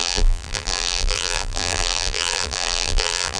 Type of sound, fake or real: fake